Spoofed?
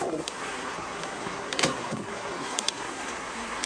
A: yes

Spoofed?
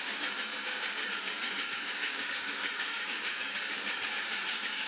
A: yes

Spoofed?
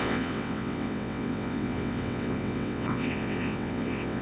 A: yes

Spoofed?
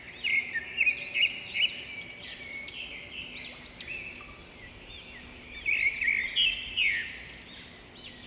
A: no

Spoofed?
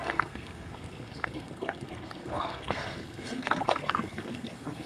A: yes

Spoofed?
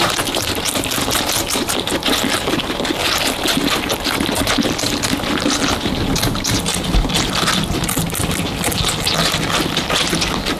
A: no